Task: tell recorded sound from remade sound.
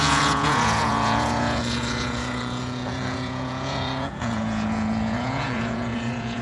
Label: remade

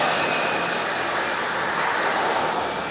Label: recorded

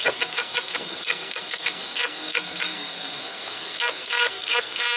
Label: remade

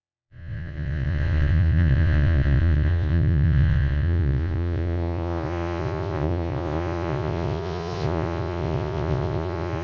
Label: remade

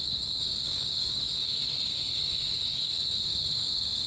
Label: remade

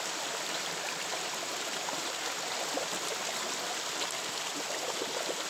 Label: recorded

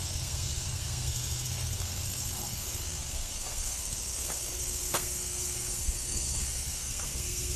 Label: remade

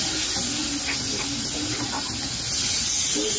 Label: recorded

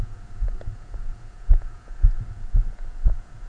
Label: remade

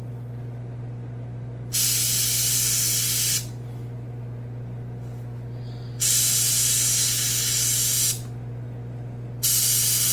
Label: recorded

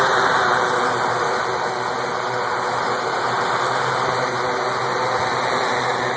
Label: recorded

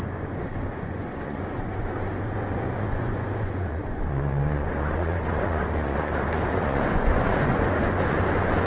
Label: remade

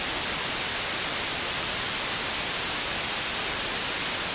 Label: recorded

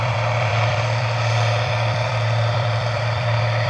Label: remade